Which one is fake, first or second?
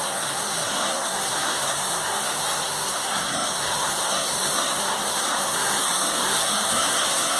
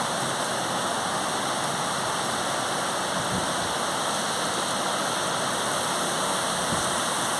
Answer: first